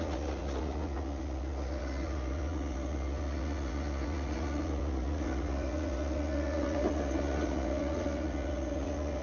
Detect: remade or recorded remade